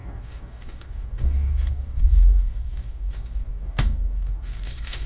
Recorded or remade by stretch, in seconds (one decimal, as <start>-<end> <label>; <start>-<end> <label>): 0.0-5.1 remade